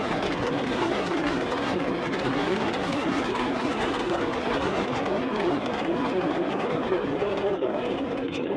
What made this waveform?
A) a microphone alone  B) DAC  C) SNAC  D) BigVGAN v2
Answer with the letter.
C